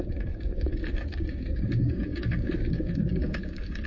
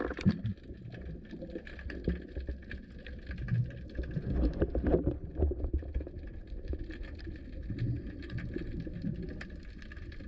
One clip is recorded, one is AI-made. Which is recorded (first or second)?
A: second